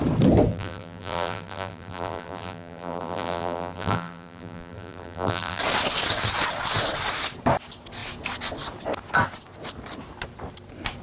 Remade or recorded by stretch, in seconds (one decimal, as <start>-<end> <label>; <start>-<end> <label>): 0.0-0.5 recorded; 0.5-5.6 remade; 5.6-11.0 recorded